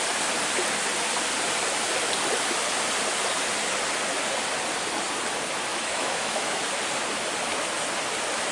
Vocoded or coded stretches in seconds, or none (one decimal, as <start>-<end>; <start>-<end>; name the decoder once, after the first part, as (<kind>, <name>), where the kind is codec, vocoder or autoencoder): 5.7-6.6 (autoencoder, DAC-VAE)

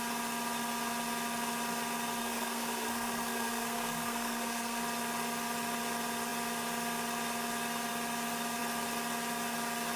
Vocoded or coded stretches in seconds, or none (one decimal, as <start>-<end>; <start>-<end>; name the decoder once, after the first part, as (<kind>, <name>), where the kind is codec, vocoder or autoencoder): 2.2-4.8 (codec, SNAC)

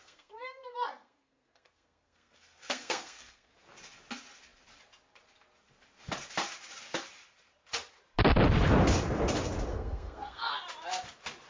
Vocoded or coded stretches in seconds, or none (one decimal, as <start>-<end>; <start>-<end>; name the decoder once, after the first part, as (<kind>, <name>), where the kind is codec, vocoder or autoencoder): 0.0-3.5 (codec, SNAC); 9.7-10.5

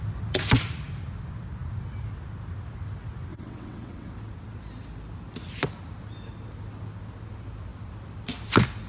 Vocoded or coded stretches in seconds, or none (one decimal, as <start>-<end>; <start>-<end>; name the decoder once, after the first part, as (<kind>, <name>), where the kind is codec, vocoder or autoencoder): 3.3-4.1 (vocoder, WaveNeXt)